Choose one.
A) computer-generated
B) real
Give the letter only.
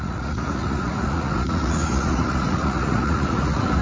A